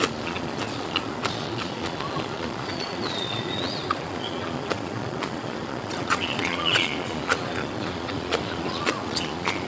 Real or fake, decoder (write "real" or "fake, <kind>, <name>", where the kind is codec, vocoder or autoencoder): fake, vocoder, Vocos